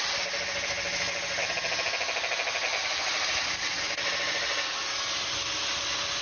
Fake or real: real